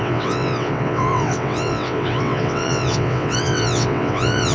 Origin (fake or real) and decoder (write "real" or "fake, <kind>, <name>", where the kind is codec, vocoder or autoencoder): fake, vocoder, WaveNeXt